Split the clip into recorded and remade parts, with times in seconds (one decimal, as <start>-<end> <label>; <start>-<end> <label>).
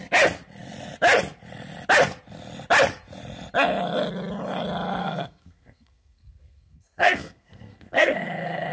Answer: 0.0-5.0 recorded; 5.0-8.7 remade